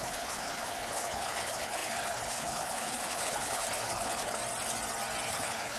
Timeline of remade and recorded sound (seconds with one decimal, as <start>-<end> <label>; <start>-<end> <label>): 0.0-4.4 remade; 4.4-5.3 recorded; 5.3-5.8 remade